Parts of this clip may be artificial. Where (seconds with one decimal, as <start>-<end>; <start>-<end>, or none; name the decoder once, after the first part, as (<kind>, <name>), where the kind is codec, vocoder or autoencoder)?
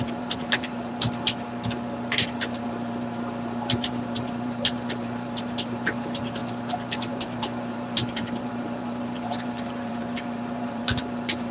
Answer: 0.0-0.9 (vocoder, BigVGAN v2); 2.6-6.4; 7.1-11.5